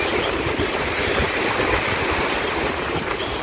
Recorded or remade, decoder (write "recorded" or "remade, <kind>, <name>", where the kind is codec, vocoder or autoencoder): recorded